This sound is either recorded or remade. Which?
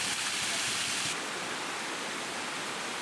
recorded